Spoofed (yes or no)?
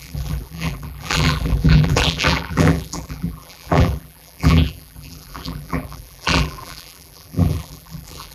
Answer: yes